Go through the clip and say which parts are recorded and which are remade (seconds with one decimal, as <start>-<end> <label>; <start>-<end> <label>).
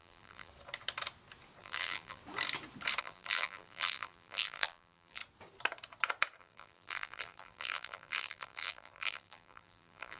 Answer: 0.0-0.5 remade; 0.5-1.6 recorded; 1.6-2.2 remade; 2.2-3.0 recorded; 3.0-5.2 remade; 5.2-6.4 recorded; 6.4-10.2 remade